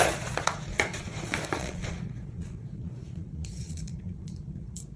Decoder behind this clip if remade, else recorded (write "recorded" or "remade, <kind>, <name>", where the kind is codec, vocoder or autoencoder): remade, vocoder, Vocos